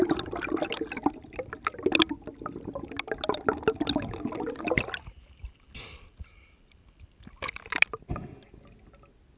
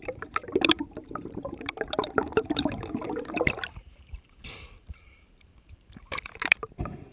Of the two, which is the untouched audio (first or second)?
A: first